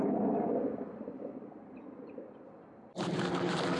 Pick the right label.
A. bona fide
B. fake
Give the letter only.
A